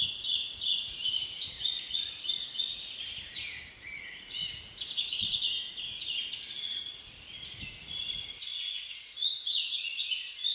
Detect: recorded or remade remade